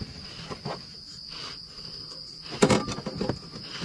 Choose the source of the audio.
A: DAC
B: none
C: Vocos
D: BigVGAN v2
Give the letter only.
B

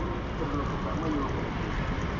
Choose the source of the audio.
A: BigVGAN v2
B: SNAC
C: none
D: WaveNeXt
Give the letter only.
C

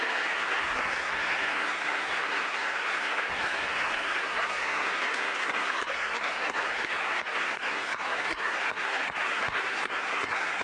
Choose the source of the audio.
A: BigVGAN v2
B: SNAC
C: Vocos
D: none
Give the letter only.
B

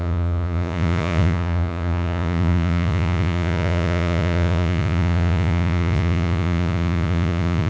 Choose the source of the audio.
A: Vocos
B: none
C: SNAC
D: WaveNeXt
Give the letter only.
A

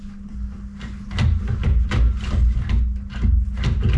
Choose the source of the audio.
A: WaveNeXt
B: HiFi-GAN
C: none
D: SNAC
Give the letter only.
C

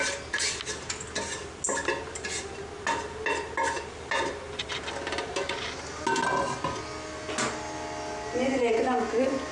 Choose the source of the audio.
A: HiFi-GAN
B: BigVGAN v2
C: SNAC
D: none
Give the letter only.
D